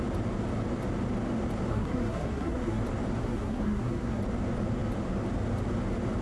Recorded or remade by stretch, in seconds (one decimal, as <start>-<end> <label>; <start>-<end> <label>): 0.0-1.7 recorded; 1.7-2.8 remade; 2.8-3.2 recorded; 3.2-4.2 remade; 4.2-6.2 recorded

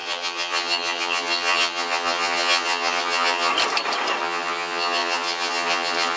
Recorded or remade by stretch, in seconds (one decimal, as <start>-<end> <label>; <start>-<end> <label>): 0.0-3.5 remade; 3.5-4.2 recorded; 4.2-6.2 remade

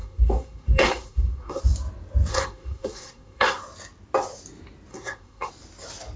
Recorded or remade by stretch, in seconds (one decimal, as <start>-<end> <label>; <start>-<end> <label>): 0.0-1.6 remade; 1.6-2.3 recorded; 2.3-3.6 remade; 3.6-4.9 recorded; 4.9-5.5 remade; 5.5-6.2 recorded

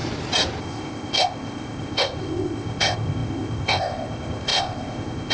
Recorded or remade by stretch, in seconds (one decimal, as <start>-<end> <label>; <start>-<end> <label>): 0.0-0.6 recorded; 0.6-5.3 remade

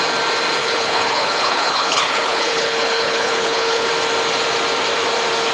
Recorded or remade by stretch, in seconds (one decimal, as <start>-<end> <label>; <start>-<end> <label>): 0.0-0.6 recorded; 0.6-3.9 remade; 3.9-5.5 recorded

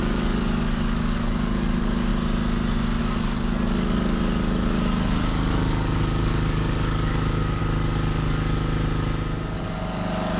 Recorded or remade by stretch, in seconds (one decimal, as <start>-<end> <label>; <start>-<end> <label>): 0.0-2.1 remade; 2.1-3.0 recorded; 3.0-7.6 remade; 7.6-9.6 recorded; 9.6-10.4 remade

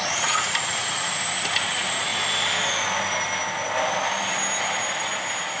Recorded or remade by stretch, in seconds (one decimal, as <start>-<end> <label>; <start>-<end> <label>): 0.0-1.1 remade; 1.1-1.7 recorded; 1.7-2.1 remade; 2.1-5.6 recorded